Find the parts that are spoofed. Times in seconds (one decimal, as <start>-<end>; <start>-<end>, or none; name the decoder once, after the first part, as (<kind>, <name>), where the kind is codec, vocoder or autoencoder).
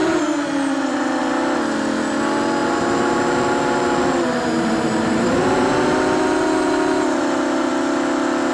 0.0-1.2 (vocoder, BigVGAN v2); 2.6-7.7